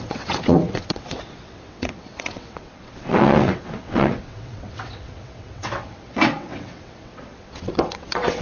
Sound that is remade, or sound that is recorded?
remade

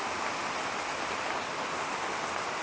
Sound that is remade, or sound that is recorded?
recorded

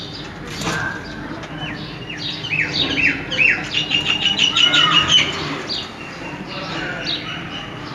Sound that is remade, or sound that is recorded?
recorded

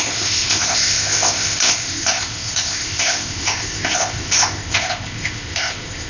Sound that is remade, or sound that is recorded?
remade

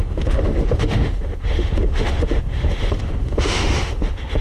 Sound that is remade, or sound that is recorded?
remade